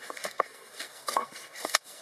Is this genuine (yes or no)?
no